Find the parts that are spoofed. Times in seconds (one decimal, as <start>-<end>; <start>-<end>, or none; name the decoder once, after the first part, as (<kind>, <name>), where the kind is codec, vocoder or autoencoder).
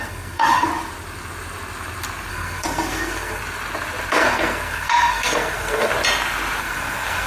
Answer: 0.0-0.7 (codec, SNAC); 2.3-3.4; 4.1-5.9; 6.6-7.3